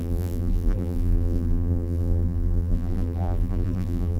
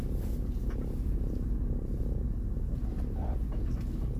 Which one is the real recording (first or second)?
second